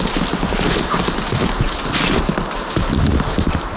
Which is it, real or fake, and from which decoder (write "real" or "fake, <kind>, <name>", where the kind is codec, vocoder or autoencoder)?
real